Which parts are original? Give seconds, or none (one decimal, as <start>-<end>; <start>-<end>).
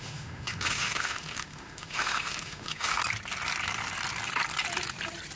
3.0-5.4